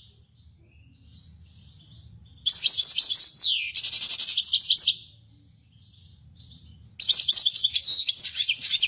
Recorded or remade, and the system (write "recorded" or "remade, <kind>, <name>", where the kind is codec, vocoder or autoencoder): recorded